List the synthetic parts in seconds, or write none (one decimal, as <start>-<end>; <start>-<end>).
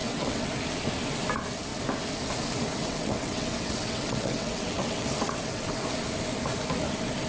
0.0-0.5; 2.8-5.9